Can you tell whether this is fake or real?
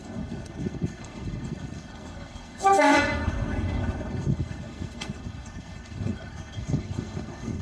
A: fake